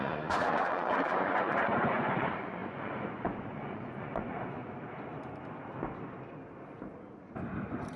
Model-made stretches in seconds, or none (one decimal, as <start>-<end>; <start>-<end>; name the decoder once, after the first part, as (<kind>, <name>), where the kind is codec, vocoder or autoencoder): 0.0-4.6 (vocoder, Vocos)